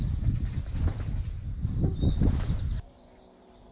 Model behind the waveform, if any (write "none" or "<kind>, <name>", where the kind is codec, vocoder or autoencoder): none